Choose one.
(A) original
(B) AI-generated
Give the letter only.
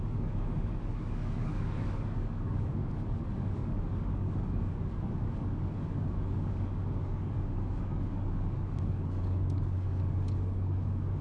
B